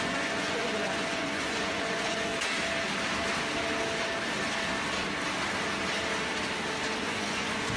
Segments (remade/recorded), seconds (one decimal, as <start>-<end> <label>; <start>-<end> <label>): 0.0-2.3 remade; 2.3-7.0 recorded; 7.0-7.8 remade